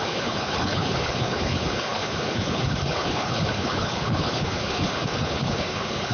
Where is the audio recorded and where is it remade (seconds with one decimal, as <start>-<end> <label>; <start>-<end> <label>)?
0.0-6.1 remade